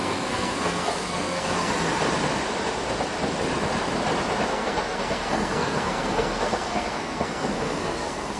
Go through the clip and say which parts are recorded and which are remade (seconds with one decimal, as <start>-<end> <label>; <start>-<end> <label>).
0.0-1.7 remade; 1.7-4.5 recorded; 4.5-8.4 remade